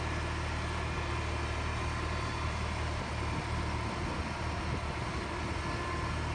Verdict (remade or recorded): recorded